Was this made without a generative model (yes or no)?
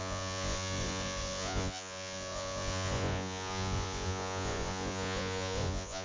no